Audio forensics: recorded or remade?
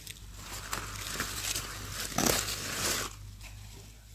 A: recorded